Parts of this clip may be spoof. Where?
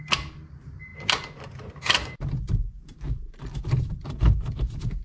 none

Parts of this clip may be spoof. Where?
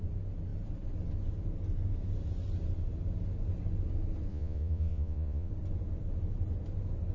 4.3-5.5 (vocoder, Vocos)